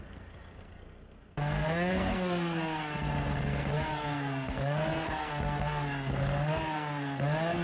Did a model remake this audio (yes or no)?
yes